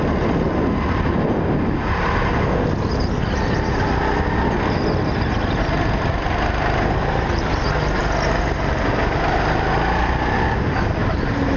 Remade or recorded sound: recorded